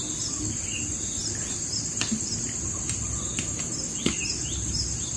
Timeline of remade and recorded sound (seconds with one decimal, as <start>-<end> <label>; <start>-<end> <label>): 0.0-5.2 recorded